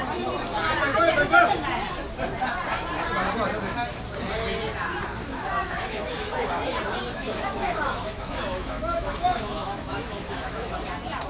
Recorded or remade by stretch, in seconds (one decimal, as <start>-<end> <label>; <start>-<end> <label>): 0.0-0.9 recorded; 0.9-1.4 remade; 1.4-5.2 recorded; 5.2-6.5 remade; 6.5-7.1 recorded; 7.1-10.7 remade; 10.7-11.3 recorded